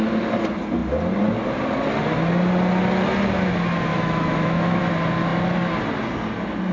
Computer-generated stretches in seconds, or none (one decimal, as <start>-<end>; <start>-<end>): 3.9-4.8